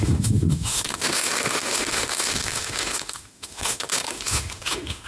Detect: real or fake fake